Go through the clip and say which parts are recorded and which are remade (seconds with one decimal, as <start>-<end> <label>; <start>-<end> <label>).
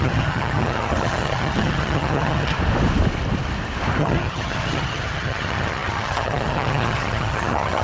0.0-2.5 remade; 2.5-4.0 recorded; 4.0-7.8 remade